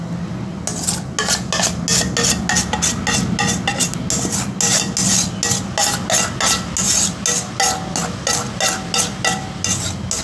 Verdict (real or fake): real